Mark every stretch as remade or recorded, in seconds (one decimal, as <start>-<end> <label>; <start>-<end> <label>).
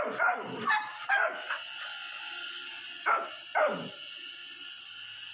0.0-2.7 recorded; 2.7-3.6 remade; 3.6-4.4 recorded; 4.4-5.3 remade